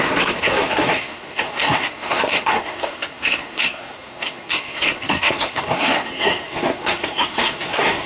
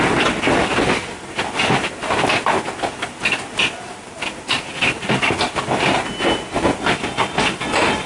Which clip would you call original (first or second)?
second